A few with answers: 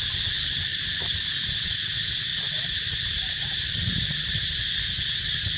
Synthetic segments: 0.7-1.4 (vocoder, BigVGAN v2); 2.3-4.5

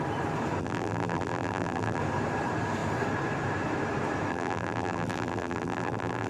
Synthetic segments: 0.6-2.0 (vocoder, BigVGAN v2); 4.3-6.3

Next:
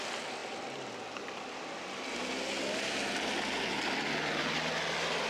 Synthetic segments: none

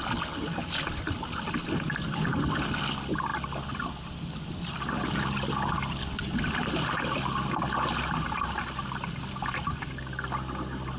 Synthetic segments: none

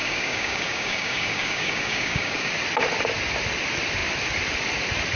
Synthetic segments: 0.0-2.5 (codec, DAC)

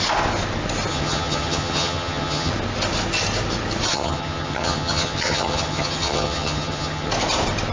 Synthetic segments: 0.9-2.5 (vocoder, HiFi-GAN); 3.9-7.1